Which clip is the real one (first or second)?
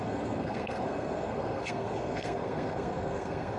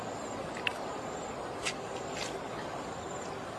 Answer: second